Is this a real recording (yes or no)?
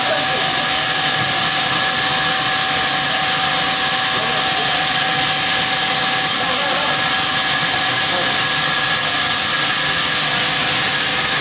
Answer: yes